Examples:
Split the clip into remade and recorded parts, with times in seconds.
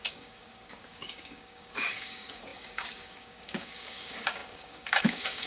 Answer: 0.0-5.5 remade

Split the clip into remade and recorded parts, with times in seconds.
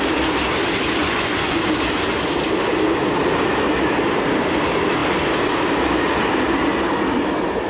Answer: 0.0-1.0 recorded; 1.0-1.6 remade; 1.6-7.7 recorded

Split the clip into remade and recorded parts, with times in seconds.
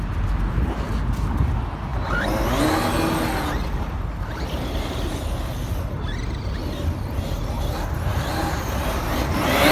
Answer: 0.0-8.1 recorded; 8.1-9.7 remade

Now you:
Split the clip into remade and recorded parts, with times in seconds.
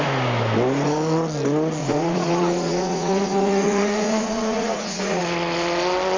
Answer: 0.0-1.8 recorded; 1.8-5.2 remade; 5.2-6.2 recorded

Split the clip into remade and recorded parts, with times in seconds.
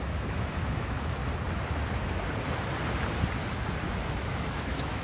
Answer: 0.0-1.2 remade; 1.2-4.2 recorded; 4.2-5.0 remade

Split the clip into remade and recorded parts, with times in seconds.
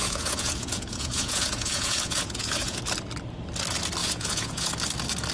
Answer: 0.0-2.8 remade; 2.8-4.0 recorded; 4.0-4.7 remade; 4.7-5.3 recorded